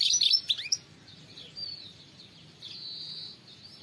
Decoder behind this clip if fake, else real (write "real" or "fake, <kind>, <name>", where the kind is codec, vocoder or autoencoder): fake, vocoder, BigVGAN v2